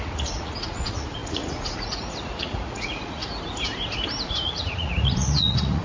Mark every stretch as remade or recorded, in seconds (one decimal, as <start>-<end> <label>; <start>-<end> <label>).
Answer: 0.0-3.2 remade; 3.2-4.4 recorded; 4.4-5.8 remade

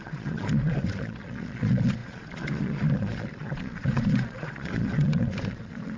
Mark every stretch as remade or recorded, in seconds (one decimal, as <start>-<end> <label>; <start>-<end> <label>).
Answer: 0.0-6.0 remade

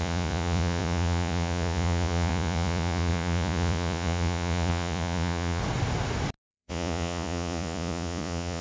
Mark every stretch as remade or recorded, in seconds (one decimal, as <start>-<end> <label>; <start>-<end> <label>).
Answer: 0.0-5.6 remade; 5.6-6.5 recorded; 6.5-8.6 remade